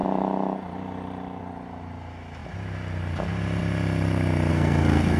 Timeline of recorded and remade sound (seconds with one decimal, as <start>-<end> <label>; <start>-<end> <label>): 0.0-4.5 recorded; 4.5-5.2 remade